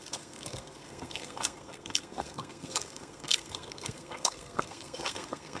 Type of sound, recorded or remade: remade